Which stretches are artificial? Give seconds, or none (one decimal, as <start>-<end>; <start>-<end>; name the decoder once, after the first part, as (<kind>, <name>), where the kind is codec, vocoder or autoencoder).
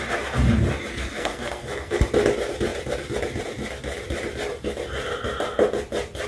0.9-2.0 (codec, SNAC)